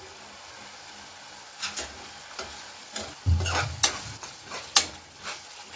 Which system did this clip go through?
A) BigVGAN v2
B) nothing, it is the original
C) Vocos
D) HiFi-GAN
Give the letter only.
B